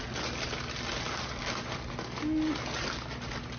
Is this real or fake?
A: real